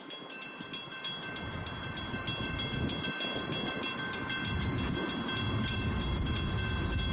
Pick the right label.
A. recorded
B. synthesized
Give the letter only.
A